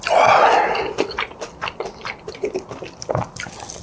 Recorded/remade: recorded